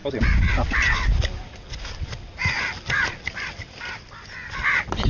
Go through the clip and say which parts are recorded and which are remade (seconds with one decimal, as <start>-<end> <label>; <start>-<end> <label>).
0.0-5.1 recorded